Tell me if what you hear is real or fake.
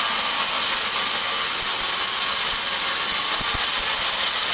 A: real